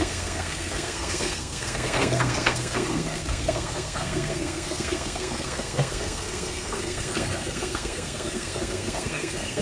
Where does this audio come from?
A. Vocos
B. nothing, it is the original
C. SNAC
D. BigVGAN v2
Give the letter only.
C